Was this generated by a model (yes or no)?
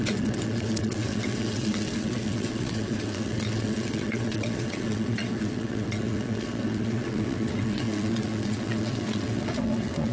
yes